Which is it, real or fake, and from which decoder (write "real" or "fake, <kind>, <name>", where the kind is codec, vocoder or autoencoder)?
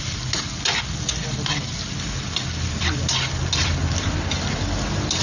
real